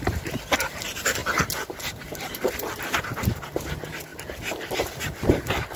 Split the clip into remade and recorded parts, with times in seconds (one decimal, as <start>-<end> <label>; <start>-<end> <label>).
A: 0.0-5.8 recorded